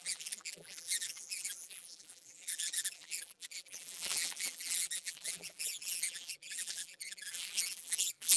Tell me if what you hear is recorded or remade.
remade